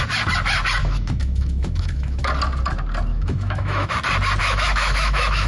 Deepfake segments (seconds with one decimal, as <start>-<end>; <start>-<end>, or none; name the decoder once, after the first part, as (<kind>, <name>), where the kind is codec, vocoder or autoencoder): 0.8-2.3 (autoencoder, DAC-VAE); 3.1-3.9; 4.4-5.5